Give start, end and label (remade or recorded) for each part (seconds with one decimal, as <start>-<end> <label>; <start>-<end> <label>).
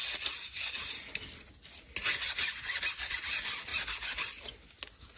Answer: 0.0-5.2 recorded